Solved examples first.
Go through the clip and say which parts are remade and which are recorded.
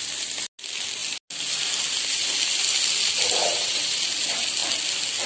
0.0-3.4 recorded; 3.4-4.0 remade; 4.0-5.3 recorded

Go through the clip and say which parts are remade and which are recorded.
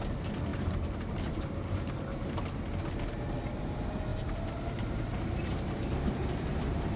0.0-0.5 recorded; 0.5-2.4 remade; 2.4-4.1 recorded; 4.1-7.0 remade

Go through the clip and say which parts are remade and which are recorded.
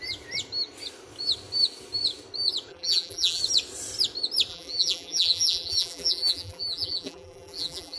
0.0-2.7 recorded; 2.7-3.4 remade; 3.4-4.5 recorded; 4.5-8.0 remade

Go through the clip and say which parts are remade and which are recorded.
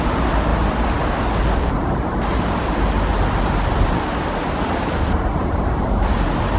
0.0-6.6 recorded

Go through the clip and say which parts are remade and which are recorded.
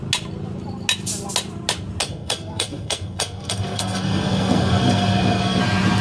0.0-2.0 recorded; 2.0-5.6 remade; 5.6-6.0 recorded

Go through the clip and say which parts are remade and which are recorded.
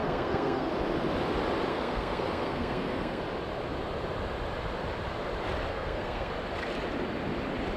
0.0-0.7 remade; 0.7-1.7 recorded; 1.7-3.2 remade; 3.2-5.7 recorded; 5.7-6.3 remade; 6.3-7.8 recorded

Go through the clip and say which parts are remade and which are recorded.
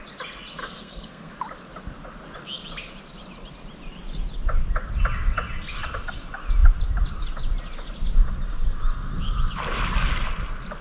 0.0-0.6 recorded; 0.6-1.3 remade; 1.3-10.8 recorded